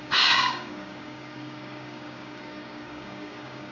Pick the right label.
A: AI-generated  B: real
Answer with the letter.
A